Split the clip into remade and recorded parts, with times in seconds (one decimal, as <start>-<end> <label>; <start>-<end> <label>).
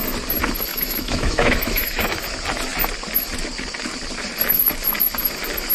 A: 0.0-0.7 recorded; 0.7-2.2 remade; 2.2-5.7 recorded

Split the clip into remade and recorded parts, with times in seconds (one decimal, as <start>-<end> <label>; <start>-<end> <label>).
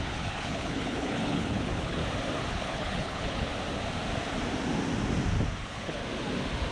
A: 0.0-2.0 remade; 2.0-2.5 recorded; 2.5-3.5 remade; 3.5-5.6 recorded; 5.6-6.0 remade; 6.0-6.7 recorded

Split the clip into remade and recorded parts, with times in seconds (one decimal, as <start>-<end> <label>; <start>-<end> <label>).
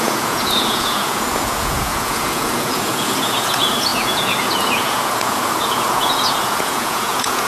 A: 0.0-7.5 remade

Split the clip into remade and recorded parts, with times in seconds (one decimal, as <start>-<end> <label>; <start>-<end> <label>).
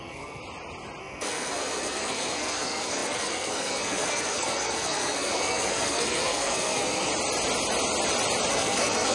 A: 0.0-0.4 remade; 0.4-1.0 recorded; 1.0-7.1 remade; 7.1-8.5 recorded; 8.5-9.1 remade